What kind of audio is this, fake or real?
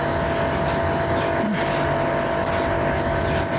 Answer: real